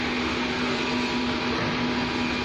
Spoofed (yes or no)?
no